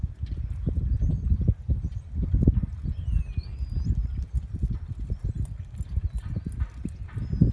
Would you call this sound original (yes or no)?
yes